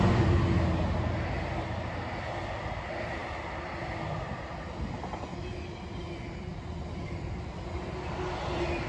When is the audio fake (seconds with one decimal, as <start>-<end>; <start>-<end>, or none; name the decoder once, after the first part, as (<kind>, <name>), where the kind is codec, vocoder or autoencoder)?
none